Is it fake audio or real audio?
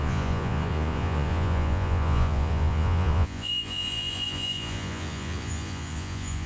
fake